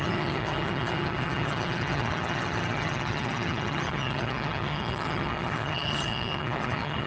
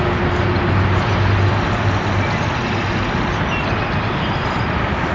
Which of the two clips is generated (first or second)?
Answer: first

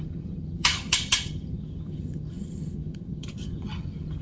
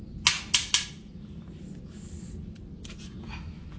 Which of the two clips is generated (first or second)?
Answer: first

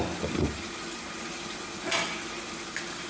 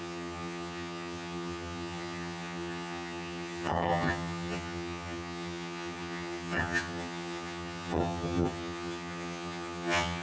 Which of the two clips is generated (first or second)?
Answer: second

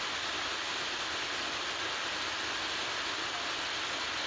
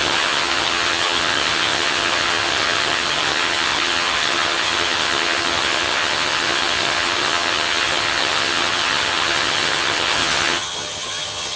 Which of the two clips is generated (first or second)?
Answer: second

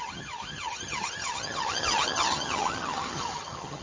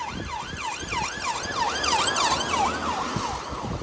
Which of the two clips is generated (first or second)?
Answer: first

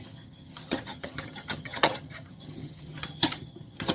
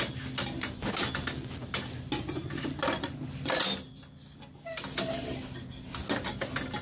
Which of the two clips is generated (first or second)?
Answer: first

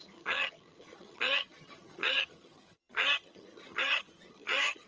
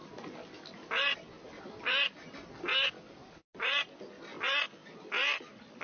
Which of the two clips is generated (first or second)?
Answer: first